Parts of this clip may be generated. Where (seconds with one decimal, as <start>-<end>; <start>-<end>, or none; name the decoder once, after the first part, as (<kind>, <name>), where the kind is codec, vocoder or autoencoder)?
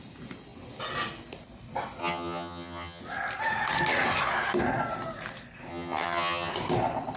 2.0-3.0 (vocoder, HiFi-GAN); 5.7-6.5